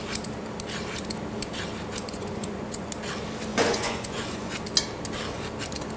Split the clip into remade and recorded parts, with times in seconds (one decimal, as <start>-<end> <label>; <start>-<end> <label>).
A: 0.0-2.0 recorded; 2.0-2.9 remade; 2.9-3.5 recorded; 3.5-4.5 remade; 4.5-6.0 recorded